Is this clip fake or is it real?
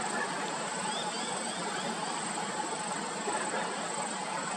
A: real